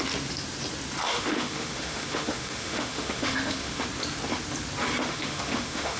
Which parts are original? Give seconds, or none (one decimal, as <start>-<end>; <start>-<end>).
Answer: 0.0-1.1; 3.8-5.0